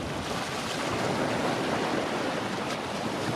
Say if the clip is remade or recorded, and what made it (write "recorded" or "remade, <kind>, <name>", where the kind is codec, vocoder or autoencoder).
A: recorded